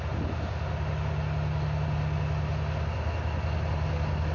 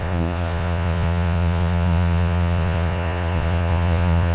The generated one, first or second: second